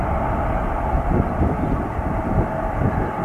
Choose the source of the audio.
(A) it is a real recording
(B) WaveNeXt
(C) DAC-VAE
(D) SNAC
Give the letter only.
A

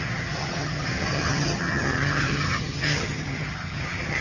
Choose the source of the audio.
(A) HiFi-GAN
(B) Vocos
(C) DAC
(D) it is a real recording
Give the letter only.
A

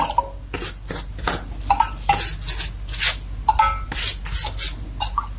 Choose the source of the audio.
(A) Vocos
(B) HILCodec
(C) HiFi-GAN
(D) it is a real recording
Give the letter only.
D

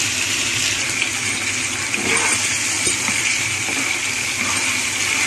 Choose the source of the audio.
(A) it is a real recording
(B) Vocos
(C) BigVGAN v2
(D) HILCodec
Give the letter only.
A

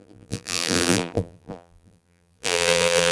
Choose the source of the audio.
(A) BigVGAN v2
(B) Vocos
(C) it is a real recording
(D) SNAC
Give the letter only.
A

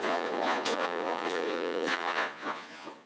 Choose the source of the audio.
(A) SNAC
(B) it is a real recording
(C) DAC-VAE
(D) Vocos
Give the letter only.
D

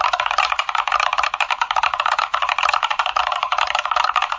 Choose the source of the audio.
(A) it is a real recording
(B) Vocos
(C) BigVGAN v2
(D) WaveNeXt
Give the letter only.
C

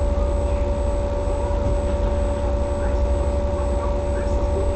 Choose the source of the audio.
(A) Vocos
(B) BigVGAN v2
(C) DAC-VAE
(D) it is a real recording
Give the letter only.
D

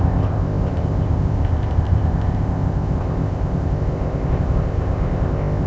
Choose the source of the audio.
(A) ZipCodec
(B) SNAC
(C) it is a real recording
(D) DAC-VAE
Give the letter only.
A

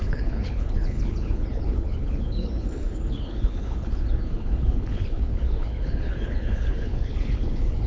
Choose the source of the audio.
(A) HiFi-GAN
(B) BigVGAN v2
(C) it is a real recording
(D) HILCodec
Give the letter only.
D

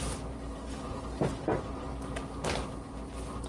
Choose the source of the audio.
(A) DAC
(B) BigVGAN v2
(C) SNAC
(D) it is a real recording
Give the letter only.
B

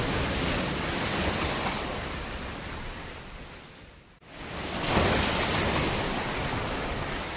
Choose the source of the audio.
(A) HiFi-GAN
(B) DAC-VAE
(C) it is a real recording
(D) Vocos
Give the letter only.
C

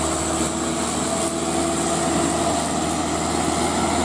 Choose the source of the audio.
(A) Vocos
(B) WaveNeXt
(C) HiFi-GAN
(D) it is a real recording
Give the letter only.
D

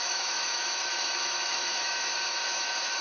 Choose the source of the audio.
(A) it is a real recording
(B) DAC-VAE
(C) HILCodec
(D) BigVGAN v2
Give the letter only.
B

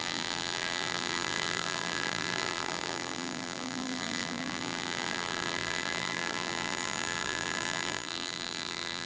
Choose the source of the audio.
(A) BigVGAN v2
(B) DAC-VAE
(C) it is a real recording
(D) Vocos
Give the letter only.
A